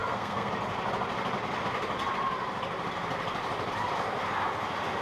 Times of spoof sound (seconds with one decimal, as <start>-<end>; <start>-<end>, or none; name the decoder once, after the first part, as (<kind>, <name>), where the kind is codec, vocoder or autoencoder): 0.0-0.5 (codec, SNAC)